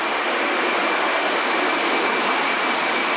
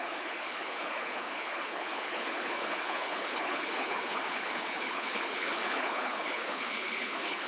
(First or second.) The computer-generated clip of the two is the second